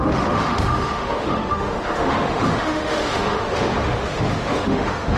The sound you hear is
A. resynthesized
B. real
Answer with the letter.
A